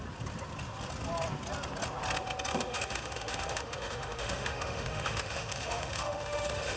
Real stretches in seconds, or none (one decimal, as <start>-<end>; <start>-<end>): 0.0-2.5